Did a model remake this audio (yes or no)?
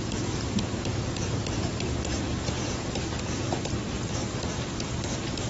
yes